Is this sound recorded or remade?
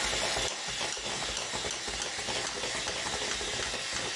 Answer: recorded